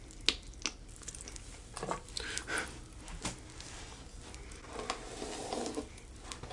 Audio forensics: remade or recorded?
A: recorded